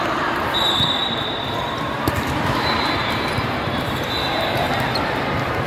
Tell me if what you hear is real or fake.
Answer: fake